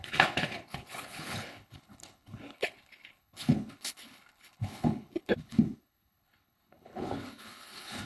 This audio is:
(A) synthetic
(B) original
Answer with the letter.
A